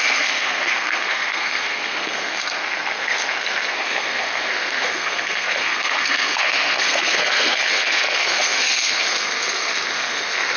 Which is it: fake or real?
fake